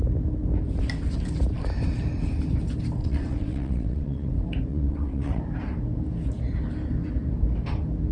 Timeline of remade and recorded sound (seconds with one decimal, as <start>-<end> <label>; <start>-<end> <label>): 0.0-3.0 recorded; 3.0-4.3 remade; 4.3-4.7 recorded; 4.7-5.4 remade; 5.4-8.1 recorded